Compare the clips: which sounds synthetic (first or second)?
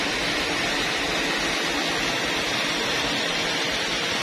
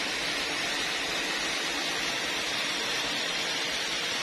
second